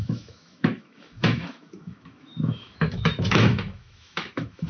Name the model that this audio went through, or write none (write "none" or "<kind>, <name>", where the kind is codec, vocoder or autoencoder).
autoencoder, DAC-VAE